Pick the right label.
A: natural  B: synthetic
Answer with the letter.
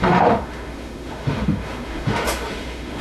B